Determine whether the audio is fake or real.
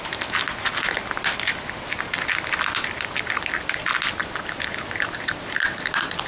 real